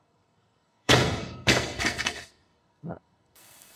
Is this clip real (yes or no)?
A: no